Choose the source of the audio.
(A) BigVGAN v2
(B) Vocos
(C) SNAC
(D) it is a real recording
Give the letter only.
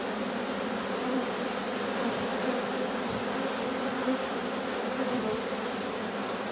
D